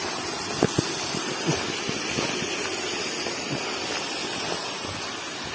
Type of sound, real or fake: real